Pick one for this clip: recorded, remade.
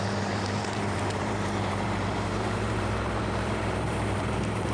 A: remade